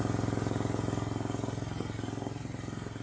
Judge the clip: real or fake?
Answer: real